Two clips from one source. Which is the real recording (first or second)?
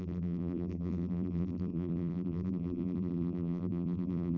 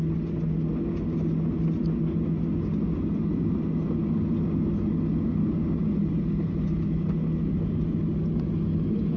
second